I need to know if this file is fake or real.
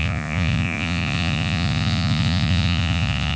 fake